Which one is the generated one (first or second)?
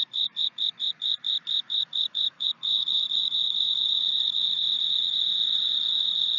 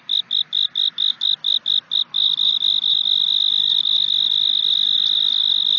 first